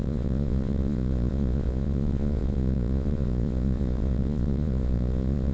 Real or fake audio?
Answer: fake